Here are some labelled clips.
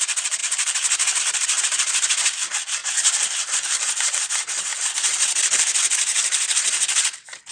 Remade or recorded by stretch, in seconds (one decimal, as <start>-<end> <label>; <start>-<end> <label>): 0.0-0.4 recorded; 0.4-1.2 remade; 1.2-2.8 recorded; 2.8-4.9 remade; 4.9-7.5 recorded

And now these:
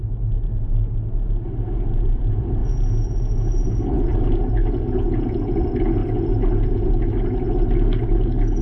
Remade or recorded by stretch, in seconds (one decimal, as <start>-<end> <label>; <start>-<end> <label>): 0.0-8.6 recorded

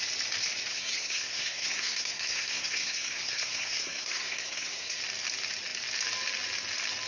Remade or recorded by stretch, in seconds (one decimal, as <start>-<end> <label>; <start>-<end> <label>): 0.0-0.7 recorded; 0.7-5.0 remade; 5.0-7.1 recorded

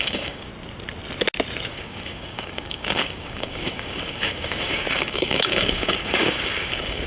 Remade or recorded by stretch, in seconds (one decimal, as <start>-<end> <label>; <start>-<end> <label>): 0.0-0.5 remade; 0.5-1.7 recorded; 1.7-7.1 remade

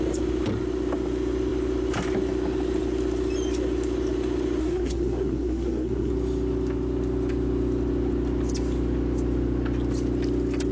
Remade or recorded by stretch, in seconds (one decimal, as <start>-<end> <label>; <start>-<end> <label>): 0.0-4.6 recorded; 4.6-6.1 remade; 6.1-10.7 recorded

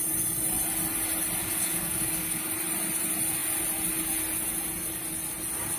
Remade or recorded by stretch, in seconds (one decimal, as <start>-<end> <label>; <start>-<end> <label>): 0.0-1.4 recorded; 1.4-2.4 remade; 2.4-5.8 recorded

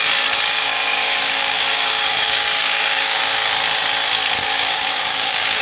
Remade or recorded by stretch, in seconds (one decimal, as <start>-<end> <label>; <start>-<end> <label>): 0.0-0.9 recorded; 0.9-3.2 remade; 3.2-4.4 recorded; 4.4-5.6 remade